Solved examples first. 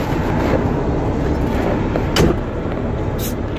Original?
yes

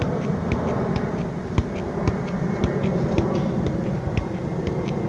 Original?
yes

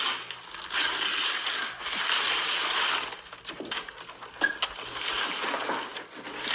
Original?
yes